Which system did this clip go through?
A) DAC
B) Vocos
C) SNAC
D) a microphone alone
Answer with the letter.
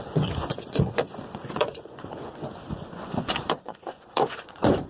B